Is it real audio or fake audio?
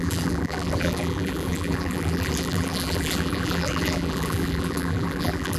fake